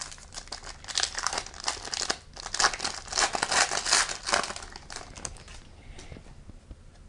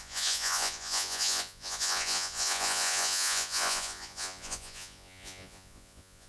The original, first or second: first